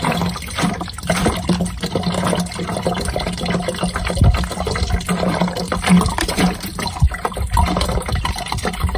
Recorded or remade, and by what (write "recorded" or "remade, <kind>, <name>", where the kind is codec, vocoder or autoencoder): recorded